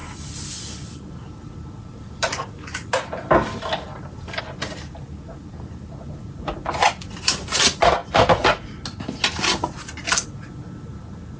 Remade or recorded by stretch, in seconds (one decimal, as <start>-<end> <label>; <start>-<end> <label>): 0.0-11.4 recorded